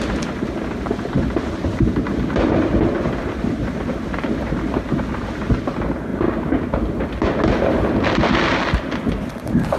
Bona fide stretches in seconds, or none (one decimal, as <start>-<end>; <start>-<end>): 0.0-9.8